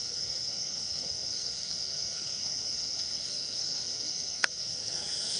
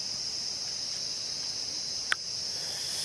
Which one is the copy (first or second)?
first